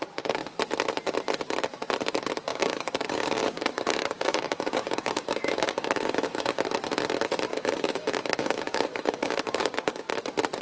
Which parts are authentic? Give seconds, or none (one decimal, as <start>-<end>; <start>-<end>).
0.0-2.5; 6.6-7.5; 10.1-10.6